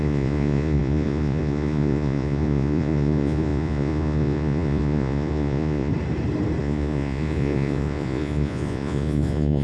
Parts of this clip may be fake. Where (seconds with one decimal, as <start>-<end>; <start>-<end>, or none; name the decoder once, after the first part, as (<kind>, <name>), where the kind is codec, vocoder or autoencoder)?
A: 0.0-5.9 (vocoder, Vocos); 6.6-9.6